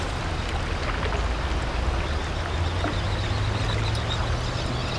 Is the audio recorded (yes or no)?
yes